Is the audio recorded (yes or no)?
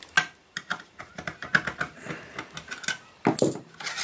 yes